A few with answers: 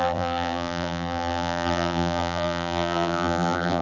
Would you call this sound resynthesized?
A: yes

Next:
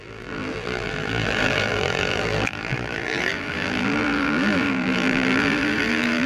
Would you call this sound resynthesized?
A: yes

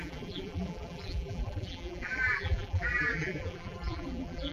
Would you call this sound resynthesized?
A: yes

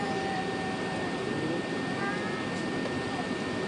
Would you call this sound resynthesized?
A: no